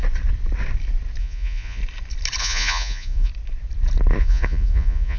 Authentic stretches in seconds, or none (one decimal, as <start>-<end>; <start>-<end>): 0.0-1.2; 1.8-2.4; 3.3-4.2